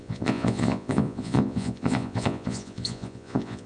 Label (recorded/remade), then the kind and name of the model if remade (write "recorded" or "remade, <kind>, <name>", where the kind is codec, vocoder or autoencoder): remade, vocoder, Vocos